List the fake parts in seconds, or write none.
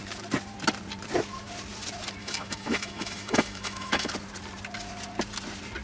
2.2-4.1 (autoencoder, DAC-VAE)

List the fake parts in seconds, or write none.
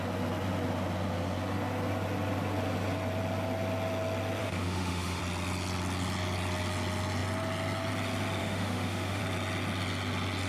4.4-5.2 (autoencoder, DAC-VAE); 8.4-9.2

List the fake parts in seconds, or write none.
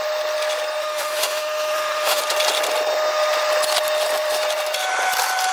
0.8-2.2 (autoencoder, DAC-VAE)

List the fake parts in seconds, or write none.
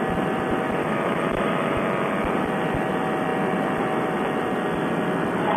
0.8-1.8 (autoencoder, DAC-VAE)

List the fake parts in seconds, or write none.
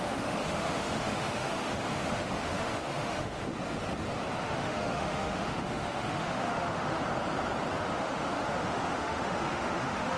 0.0-3.5 (autoencoder, DAC-VAE); 4.4-7.0; 7.8-10.2